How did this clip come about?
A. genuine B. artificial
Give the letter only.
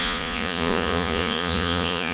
B